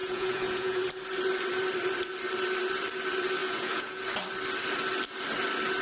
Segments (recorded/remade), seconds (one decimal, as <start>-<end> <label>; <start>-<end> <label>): 0.0-0.8 remade; 0.8-3.4 recorded; 3.4-4.0 remade; 4.0-5.8 recorded